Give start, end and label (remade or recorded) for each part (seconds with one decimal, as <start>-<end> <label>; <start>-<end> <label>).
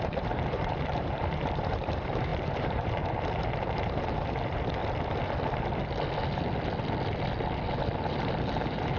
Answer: 0.0-4.8 remade; 4.8-8.1 recorded; 8.1-9.0 remade